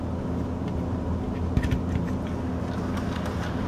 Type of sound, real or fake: real